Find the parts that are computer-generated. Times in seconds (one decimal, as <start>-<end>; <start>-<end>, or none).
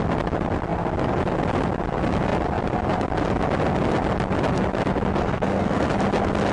5.2-5.9